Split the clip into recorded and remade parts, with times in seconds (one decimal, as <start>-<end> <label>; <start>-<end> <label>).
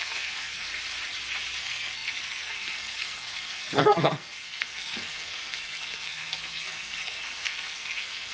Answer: 0.0-0.7 remade; 0.7-1.6 recorded; 1.6-8.3 remade